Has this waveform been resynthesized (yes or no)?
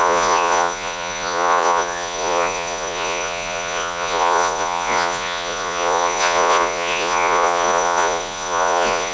yes